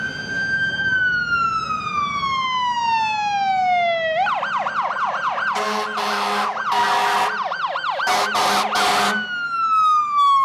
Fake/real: real